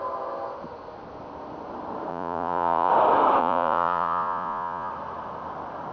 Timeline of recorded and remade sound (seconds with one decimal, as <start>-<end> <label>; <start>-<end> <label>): 0.0-2.1 recorded; 2.1-2.9 remade; 2.9-3.4 recorded; 3.4-4.9 remade; 4.9-5.9 recorded